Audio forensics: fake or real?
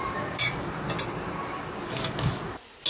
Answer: real